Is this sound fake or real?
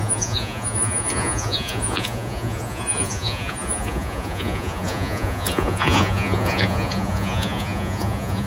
fake